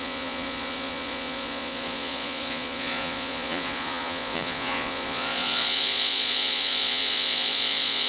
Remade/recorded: remade